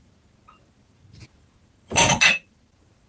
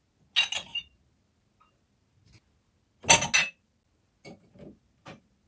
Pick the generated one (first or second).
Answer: first